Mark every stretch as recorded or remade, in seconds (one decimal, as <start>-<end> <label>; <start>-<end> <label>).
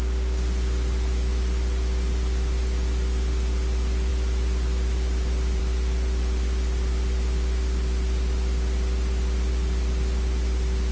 0.0-4.1 recorded; 4.1-5.6 remade; 5.6-10.9 recorded